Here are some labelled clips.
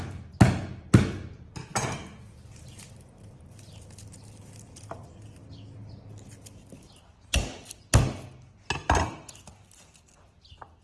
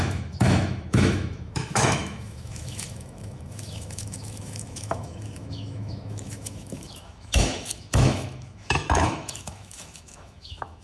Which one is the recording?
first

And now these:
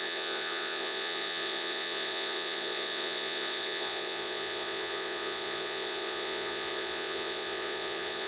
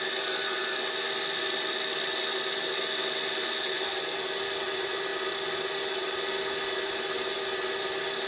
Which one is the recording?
second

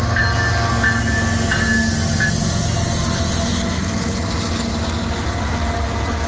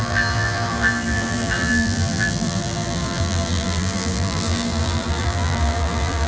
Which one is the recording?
first